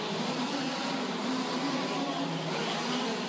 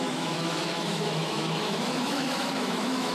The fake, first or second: second